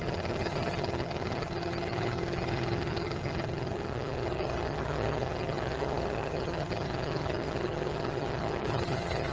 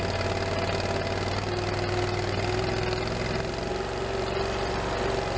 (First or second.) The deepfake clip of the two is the first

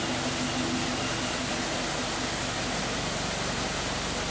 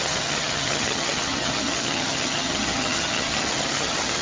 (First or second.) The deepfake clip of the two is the second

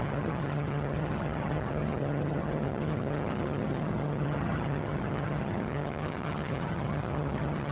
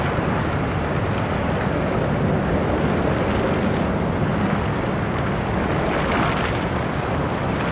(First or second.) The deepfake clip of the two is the first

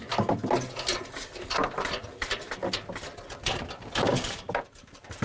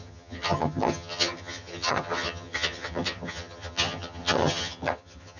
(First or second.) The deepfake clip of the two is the second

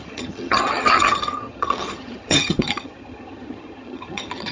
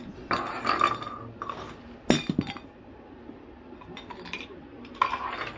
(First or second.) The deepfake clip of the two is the first